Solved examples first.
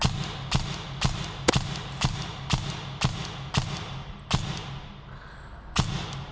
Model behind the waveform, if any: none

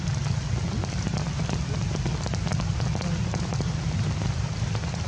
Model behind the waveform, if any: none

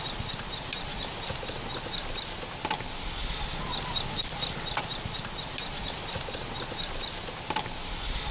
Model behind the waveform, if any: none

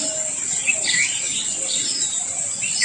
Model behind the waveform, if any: none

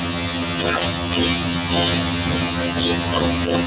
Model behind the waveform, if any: vocoder, HiFi-GAN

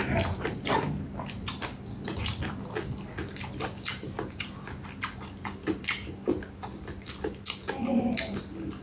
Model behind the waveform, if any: none